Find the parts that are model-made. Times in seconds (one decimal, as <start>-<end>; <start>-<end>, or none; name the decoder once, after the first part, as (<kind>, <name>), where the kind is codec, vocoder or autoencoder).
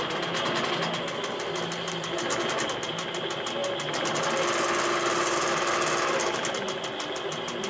none